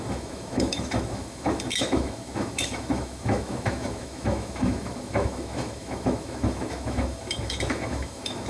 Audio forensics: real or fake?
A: fake